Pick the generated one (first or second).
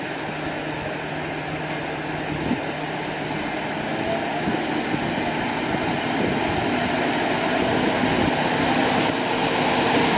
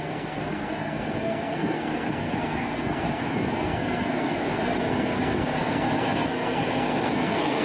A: second